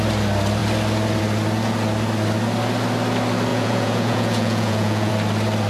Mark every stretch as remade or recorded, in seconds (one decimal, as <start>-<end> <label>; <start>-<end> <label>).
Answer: 0.0-3.5 recorded; 3.5-5.1 remade; 5.1-5.7 recorded